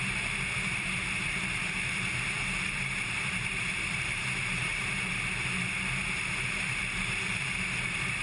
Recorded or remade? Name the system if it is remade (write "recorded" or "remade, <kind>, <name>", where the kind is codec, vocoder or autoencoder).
remade, vocoder, BigVGAN v2